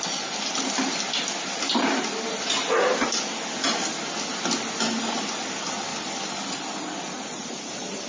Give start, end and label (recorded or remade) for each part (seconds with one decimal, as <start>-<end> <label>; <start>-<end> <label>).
0.0-8.1 recorded